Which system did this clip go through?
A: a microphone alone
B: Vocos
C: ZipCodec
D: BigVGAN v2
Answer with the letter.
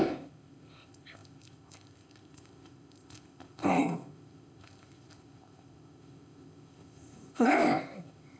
C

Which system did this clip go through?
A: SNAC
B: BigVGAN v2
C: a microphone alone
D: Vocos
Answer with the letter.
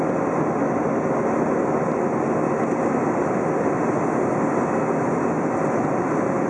C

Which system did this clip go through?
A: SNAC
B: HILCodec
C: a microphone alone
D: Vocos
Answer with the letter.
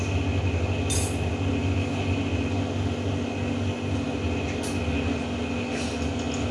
C